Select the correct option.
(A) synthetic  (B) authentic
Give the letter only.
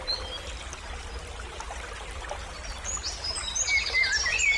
B